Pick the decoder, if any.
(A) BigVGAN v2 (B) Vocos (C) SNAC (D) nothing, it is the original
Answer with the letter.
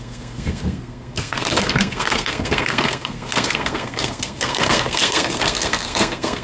C